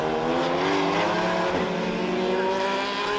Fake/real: real